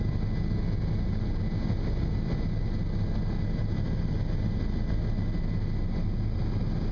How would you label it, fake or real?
real